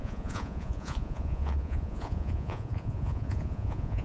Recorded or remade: remade